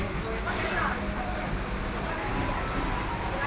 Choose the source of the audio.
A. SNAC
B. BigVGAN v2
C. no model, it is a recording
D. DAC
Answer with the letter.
B